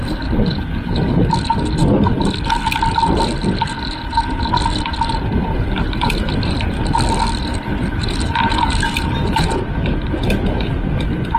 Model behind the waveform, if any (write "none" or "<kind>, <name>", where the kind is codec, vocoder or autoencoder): none